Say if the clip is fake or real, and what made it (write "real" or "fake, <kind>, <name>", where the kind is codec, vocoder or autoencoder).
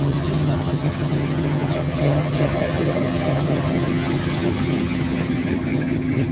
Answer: fake, vocoder, HiFi-GAN